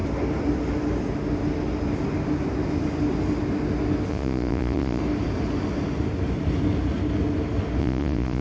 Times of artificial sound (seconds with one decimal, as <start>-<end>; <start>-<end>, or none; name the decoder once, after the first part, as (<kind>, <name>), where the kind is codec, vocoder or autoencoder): 4.1-5.0 (vocoder, Vocos); 7.8-8.4